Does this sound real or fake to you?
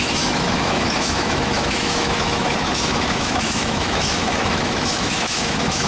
fake